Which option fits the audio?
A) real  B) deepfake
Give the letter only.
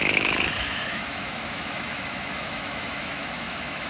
B